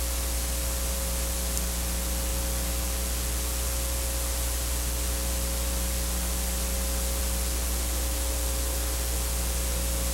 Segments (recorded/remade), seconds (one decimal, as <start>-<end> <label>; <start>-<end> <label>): 0.0-10.1 recorded